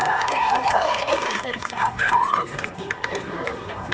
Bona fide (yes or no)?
no